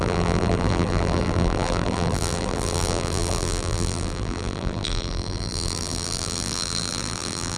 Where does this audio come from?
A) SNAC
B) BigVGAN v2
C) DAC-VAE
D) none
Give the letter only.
B